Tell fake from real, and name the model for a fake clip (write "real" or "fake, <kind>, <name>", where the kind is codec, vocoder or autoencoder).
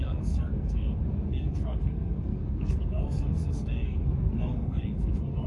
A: fake, codec, SNAC